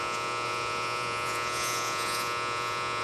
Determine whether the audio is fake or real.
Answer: fake